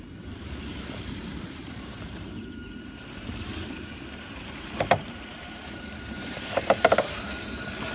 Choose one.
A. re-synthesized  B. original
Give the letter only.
A